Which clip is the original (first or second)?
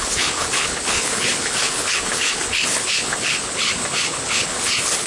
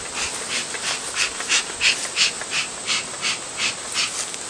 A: second